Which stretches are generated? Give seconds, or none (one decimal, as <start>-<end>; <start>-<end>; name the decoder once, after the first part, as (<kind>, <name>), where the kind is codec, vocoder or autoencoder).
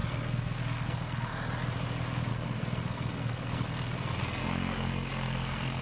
0.0-1.3 (codec, SNAC); 2.3-5.8